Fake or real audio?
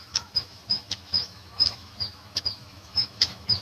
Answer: fake